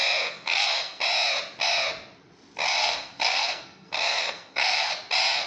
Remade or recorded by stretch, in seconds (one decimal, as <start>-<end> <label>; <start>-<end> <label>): 0.0-1.0 remade; 1.0-2.8 recorded; 2.8-4.9 remade; 4.9-5.5 recorded